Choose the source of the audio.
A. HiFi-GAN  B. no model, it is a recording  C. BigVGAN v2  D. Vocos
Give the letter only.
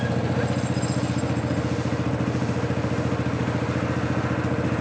B